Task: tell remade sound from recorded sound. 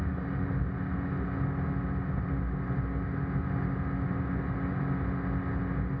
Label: recorded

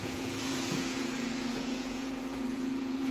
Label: remade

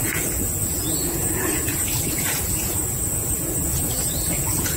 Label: remade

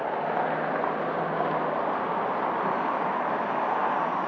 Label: recorded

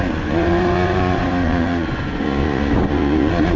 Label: remade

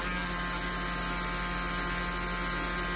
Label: recorded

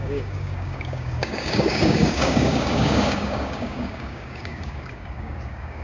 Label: remade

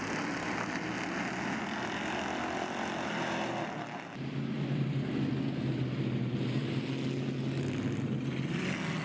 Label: recorded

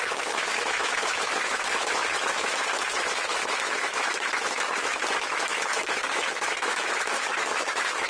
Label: remade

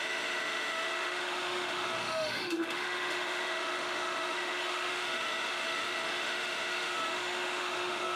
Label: remade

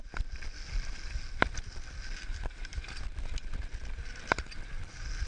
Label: recorded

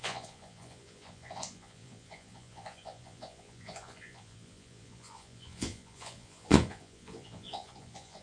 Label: remade